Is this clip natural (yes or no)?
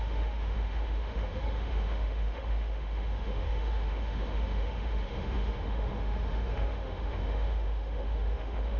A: no